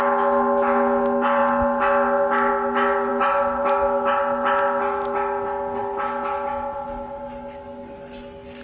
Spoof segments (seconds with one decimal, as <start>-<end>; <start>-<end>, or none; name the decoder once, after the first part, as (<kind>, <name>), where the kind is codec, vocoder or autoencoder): none